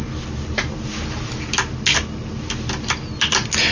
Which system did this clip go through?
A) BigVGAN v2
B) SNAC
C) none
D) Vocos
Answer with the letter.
C